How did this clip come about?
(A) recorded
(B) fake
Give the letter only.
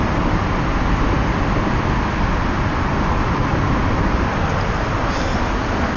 A